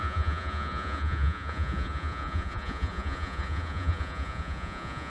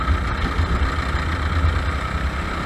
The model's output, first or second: first